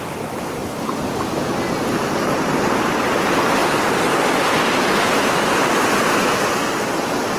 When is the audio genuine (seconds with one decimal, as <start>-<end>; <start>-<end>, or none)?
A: 0.0-7.4